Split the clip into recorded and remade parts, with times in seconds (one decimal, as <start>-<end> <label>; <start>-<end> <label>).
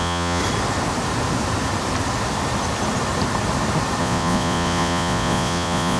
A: 0.0-0.4 remade; 0.4-4.0 recorded; 4.0-6.0 remade